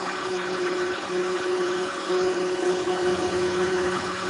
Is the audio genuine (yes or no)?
no